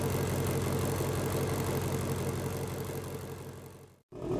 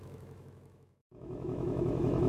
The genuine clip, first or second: first